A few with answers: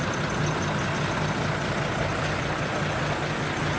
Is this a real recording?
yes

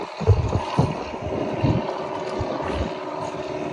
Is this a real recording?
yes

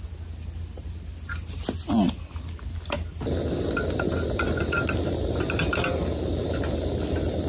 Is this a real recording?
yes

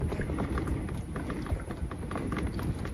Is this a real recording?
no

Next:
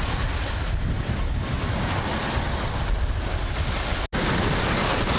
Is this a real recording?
yes